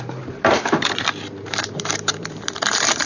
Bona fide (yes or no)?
no